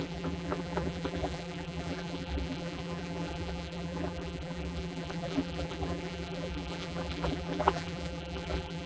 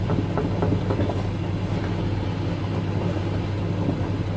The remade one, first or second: first